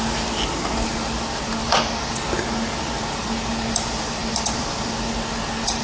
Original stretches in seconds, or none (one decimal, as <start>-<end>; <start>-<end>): 0.0-1.6; 2.1-4.2; 4.9-5.8